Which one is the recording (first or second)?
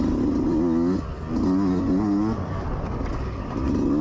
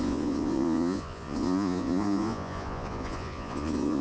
first